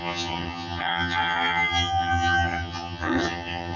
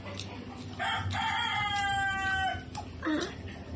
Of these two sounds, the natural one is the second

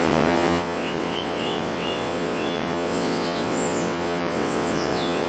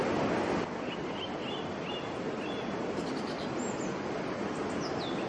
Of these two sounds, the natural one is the second